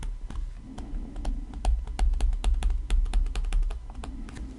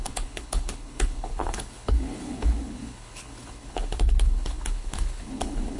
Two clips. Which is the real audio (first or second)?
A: first